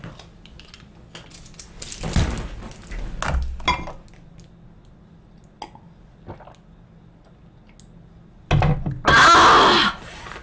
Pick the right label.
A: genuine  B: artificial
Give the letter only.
A